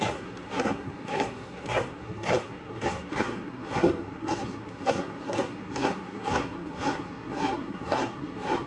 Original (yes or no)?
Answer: no